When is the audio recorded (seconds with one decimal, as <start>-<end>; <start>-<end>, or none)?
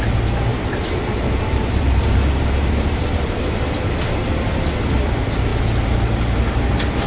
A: 0.0-0.5; 3.9-7.1